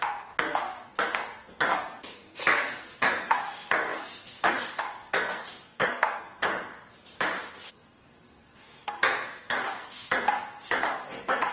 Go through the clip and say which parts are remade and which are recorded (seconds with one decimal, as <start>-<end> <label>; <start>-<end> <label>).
0.0-6.7 remade; 6.7-7.7 recorded; 7.7-11.5 remade